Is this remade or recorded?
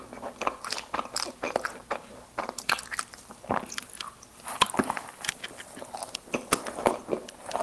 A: recorded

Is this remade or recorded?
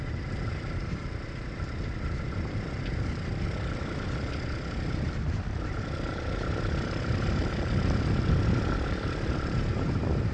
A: recorded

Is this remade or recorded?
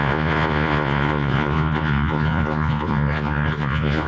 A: remade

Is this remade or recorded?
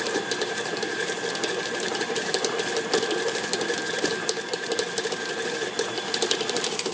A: remade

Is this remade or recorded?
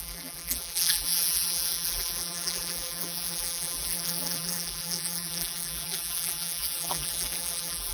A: remade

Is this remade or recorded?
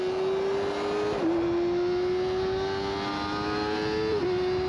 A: recorded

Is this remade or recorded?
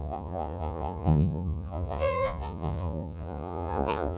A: remade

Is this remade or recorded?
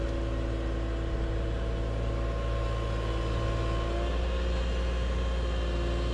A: recorded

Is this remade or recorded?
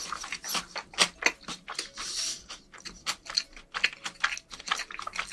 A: recorded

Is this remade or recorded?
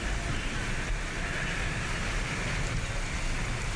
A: recorded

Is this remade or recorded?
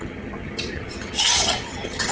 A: remade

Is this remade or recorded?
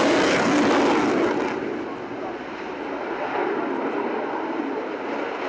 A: recorded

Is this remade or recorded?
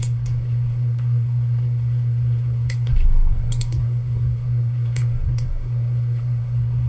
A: remade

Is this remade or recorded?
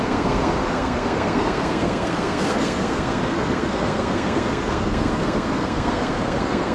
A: remade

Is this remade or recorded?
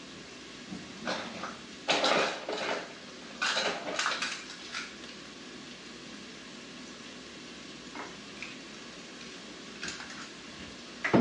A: recorded